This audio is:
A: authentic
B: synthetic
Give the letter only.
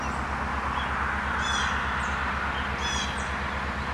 A